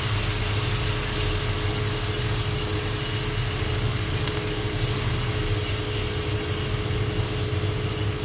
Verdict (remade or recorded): recorded